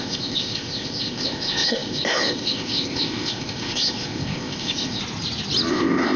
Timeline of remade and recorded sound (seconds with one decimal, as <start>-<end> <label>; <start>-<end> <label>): 0.0-5.0 remade; 5.0-5.7 recorded; 5.7-6.2 remade